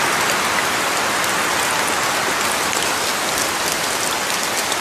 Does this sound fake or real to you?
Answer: real